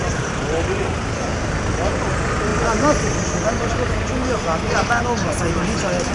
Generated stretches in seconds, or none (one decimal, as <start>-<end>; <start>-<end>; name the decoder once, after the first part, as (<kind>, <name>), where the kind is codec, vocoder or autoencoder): none